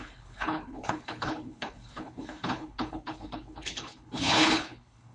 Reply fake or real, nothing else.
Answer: fake